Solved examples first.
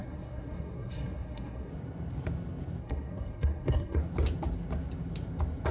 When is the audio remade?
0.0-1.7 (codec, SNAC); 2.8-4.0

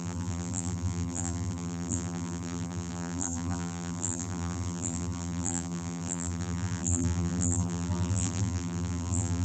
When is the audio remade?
0.0-9.4 (vocoder, BigVGAN v2)